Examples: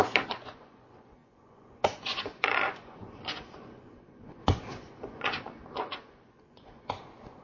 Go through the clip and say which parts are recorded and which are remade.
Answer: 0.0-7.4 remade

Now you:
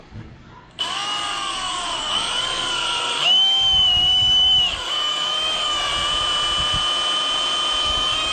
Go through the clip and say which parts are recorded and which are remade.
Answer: 0.0-5.9 remade; 5.9-7.8 recorded; 7.8-8.3 remade